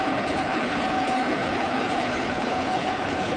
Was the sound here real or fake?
fake